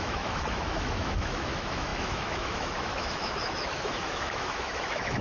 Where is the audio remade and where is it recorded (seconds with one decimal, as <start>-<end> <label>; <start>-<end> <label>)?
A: 0.0-5.2 remade